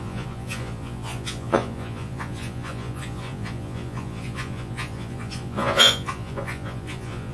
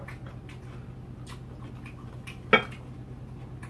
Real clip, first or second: second